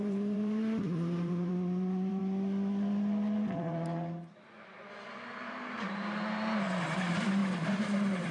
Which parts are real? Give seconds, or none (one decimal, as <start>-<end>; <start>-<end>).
2.2-5.4; 7.4-8.3